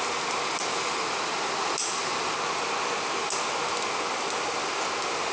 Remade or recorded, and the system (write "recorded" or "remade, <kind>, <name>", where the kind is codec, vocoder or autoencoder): recorded